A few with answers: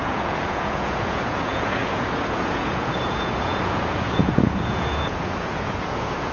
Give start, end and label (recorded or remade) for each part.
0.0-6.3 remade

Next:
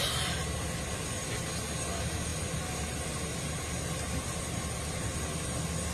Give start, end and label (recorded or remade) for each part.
0.0-5.9 recorded

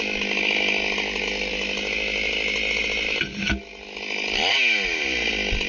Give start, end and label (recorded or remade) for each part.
0.0-5.7 recorded

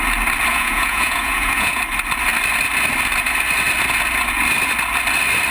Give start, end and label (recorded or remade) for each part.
0.0-0.5 recorded; 0.5-1.8 remade; 1.8-5.5 recorded

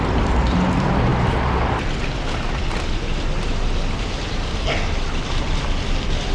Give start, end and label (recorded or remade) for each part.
0.0-6.3 recorded